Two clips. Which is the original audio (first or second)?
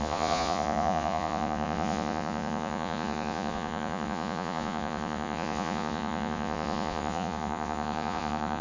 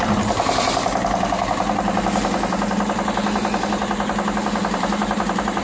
second